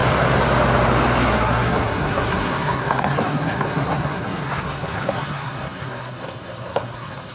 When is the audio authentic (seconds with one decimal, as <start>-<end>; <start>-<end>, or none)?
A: 0.0-1.2